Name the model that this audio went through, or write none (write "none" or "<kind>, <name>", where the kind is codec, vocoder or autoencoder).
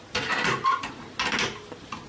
none